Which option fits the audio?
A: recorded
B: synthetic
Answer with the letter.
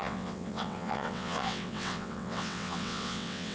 B